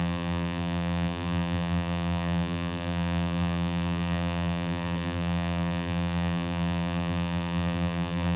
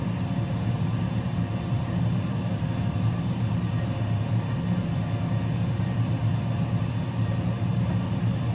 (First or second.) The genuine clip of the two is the second